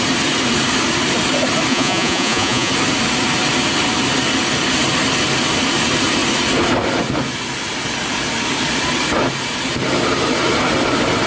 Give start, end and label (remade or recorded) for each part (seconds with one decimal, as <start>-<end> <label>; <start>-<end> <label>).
0.0-1.7 recorded; 1.7-2.7 remade; 2.7-11.3 recorded